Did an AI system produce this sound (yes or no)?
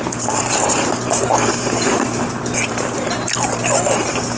yes